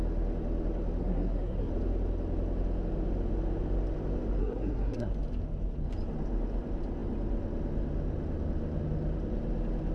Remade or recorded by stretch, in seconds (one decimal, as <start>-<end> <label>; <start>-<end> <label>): 0.0-1.0 recorded; 1.0-1.7 remade; 1.7-4.4 recorded; 4.4-5.1 remade; 5.1-9.9 recorded